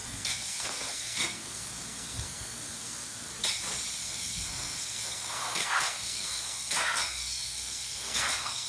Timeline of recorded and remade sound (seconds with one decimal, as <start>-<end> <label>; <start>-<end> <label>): 0.0-3.3 remade; 3.3-4.0 recorded; 4.0-8.7 remade